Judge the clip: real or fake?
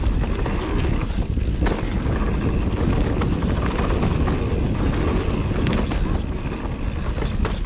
real